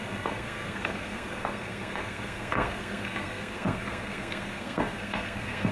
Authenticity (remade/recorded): remade